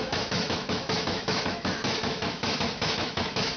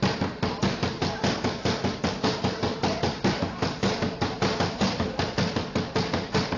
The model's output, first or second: first